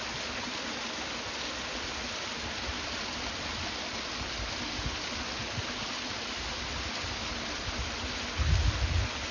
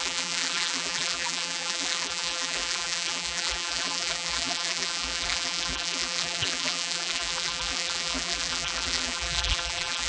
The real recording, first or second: first